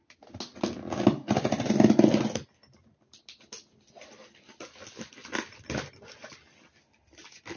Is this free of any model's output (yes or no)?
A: yes